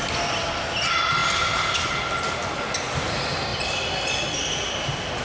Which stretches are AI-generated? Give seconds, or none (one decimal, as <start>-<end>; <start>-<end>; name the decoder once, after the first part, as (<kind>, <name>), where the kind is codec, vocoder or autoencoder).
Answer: none

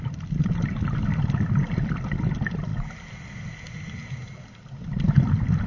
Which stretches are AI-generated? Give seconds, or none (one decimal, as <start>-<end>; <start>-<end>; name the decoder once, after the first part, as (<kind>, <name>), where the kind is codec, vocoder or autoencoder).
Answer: none

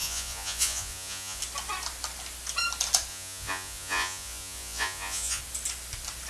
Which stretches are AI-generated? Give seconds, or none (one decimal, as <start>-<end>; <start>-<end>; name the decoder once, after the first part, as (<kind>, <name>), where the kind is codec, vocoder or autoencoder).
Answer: 0.0-1.4 (vocoder, Vocos); 3.1-5.4

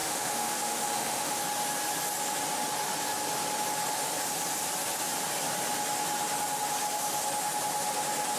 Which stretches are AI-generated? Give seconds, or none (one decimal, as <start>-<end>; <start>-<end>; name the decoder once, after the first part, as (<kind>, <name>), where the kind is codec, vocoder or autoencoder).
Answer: 0.0-1.4 (autoencoder, DAC-VAE)